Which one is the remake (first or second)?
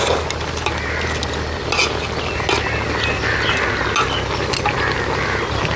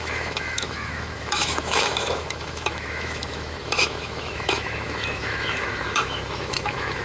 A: second